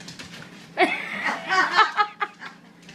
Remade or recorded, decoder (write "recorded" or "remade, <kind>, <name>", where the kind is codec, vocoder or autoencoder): recorded